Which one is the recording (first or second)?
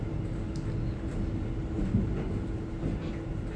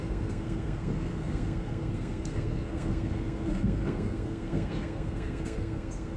first